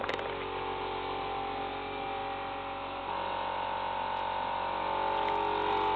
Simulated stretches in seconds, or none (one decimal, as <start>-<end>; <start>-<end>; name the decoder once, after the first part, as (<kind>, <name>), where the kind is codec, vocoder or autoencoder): none